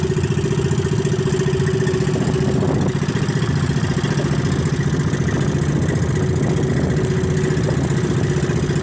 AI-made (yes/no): no